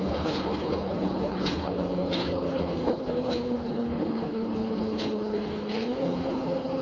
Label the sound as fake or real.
fake